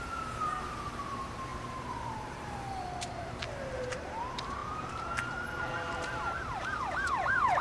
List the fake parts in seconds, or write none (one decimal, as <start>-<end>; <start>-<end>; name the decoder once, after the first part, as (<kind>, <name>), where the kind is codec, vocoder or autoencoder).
0.0-7.6 (vocoder, BigVGAN v2)